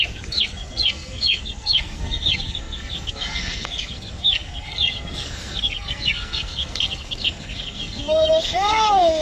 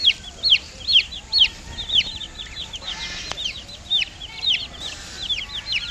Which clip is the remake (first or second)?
first